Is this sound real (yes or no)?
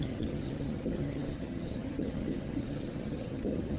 no